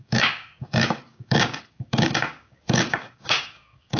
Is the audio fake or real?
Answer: fake